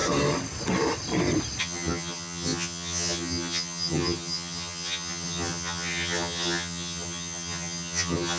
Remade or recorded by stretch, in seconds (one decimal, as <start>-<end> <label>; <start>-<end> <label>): 0.0-1.6 recorded; 1.6-8.4 remade